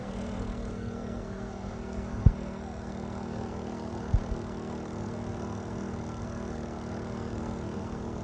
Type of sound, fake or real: fake